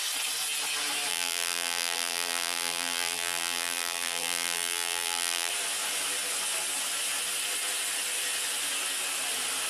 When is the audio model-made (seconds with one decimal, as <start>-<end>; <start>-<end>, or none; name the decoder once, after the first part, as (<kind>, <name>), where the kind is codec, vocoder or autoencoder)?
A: 1.1-5.5 (vocoder, BigVGAN v2)